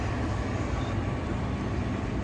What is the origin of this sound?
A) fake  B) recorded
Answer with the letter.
A